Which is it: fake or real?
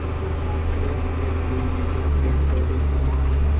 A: real